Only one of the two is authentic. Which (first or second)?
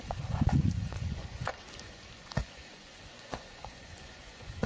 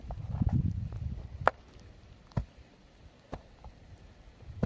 second